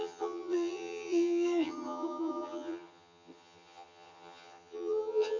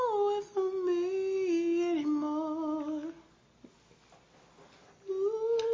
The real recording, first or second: second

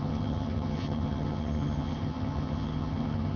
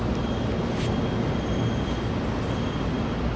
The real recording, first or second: second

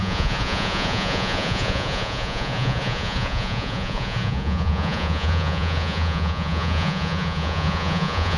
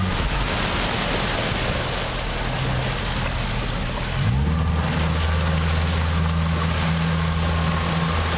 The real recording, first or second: second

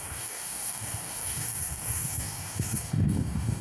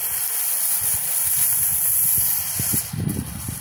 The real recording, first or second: second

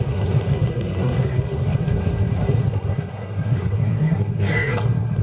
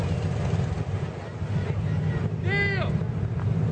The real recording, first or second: second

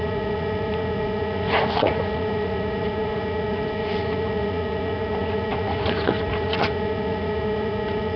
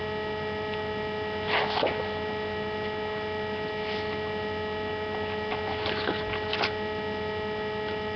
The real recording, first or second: second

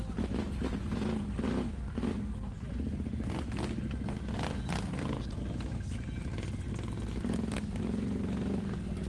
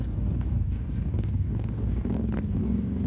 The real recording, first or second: first